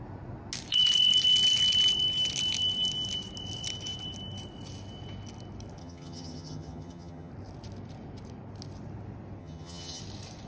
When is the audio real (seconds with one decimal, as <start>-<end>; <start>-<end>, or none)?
0.0-5.8; 7.3-9.4; 10.0-10.5